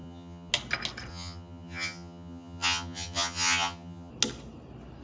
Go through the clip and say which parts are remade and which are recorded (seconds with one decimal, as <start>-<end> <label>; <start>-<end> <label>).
0.0-0.5 remade; 0.5-1.1 recorded; 1.1-4.1 remade; 4.1-5.0 recorded